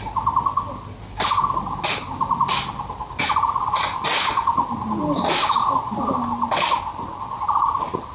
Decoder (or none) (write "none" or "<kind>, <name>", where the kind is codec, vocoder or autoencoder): none